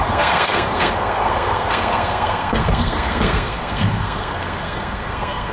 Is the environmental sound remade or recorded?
remade